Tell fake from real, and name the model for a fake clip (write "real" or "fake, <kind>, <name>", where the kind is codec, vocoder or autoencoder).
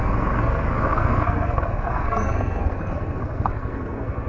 fake, codec, SNAC